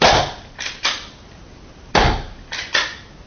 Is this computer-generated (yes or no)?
no